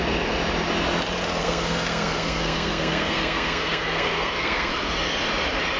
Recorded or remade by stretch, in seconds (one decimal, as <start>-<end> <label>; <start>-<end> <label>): 0.0-1.4 recorded; 1.4-4.7 remade; 4.7-5.8 recorded